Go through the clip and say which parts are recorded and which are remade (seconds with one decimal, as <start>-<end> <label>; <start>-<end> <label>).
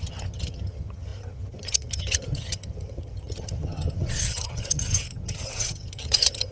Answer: 0.0-6.5 remade